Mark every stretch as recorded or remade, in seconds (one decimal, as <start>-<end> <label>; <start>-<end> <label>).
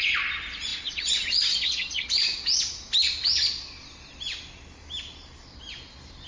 0.0-6.3 recorded